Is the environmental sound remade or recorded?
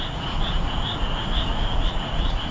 remade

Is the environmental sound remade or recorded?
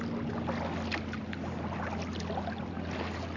recorded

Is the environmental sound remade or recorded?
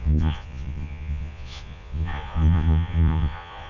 remade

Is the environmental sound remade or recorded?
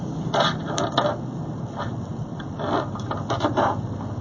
recorded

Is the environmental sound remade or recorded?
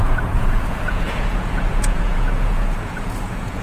remade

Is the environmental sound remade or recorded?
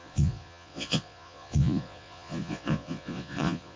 remade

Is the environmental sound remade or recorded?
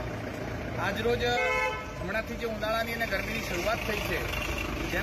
recorded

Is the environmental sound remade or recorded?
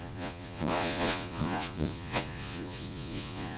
remade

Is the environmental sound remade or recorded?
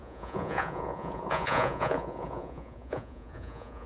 remade